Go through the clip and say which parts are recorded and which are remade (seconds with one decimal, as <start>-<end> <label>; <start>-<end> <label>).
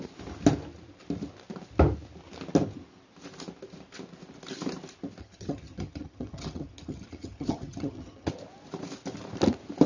0.0-5.2 recorded; 5.2-8.3 remade; 8.3-9.9 recorded